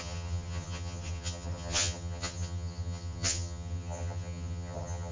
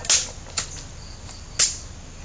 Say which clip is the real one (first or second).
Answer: second